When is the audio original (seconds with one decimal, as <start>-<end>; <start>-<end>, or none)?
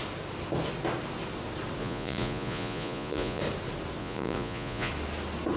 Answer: 0.0-1.8; 3.4-4.0; 4.9-5.6